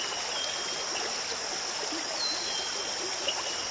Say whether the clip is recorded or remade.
recorded